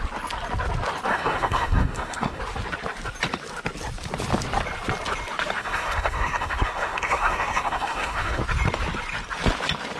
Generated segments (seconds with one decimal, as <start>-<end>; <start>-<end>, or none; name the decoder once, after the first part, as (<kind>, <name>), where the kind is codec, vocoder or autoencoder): 1.1-2.4 (codec, SNAC); 5.6-8.4